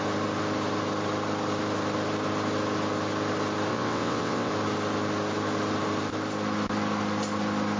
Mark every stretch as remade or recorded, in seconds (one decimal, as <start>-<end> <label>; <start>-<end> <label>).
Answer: 0.0-3.7 recorded; 3.7-4.5 remade; 4.5-7.8 recorded